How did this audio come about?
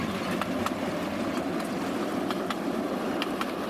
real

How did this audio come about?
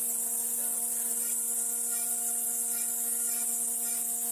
real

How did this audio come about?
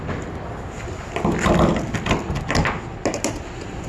real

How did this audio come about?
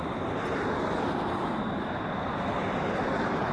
real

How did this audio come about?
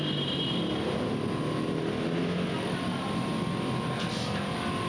real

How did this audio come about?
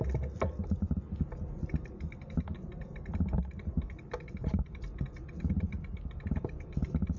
real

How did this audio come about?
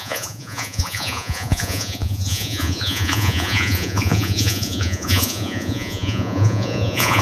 fake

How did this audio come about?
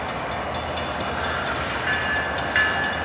real